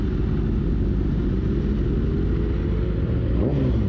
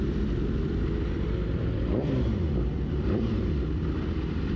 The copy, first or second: second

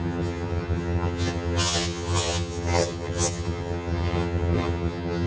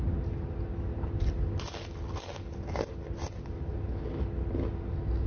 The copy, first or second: first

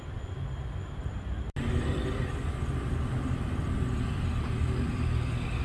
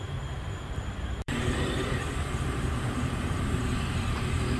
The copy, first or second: second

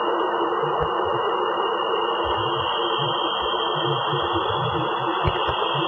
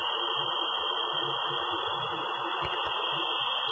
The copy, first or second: second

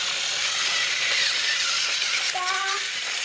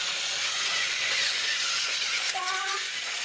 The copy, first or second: second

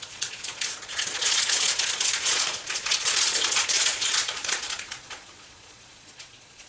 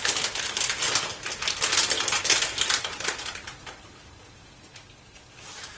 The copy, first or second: first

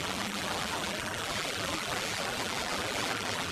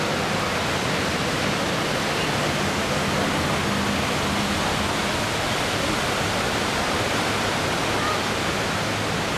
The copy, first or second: first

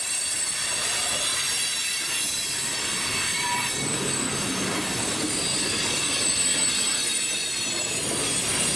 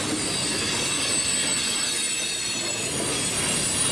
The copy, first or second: first